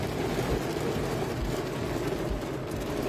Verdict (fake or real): real